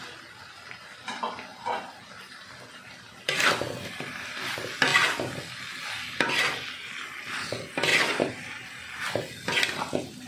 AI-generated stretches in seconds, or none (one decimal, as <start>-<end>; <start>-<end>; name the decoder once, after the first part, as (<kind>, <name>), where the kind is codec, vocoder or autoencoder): none